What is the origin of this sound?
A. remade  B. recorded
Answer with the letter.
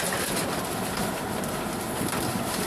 B